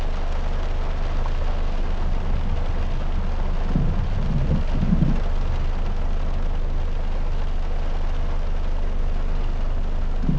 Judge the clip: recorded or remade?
recorded